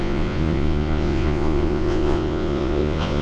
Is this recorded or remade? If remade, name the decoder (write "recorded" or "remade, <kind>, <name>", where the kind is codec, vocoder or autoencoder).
remade, vocoder, Vocos